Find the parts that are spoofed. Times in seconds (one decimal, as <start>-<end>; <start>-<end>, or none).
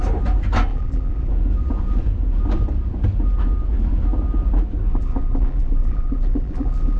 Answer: 0.7-1.3; 4.9-7.0